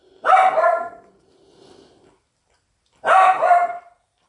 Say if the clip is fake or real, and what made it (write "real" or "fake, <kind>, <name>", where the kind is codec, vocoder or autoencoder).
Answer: fake, vocoder, BigVGAN v2